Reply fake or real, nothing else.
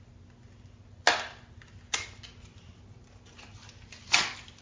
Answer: real